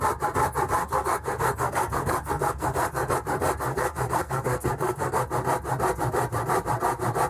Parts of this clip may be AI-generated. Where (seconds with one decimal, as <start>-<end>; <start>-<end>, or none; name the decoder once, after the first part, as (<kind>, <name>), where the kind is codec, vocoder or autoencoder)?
0.8-3.1 (codec, SNAC); 3.7-5.2